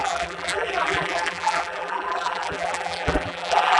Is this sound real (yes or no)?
no